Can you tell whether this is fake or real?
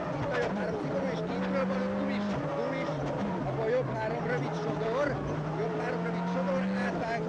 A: real